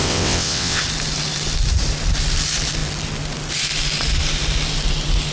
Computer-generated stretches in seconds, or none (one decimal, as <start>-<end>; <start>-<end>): 0.0-0.8